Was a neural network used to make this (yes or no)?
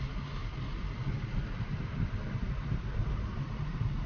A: no